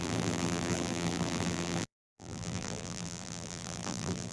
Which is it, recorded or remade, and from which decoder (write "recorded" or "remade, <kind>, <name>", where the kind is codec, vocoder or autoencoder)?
remade, vocoder, BigVGAN v2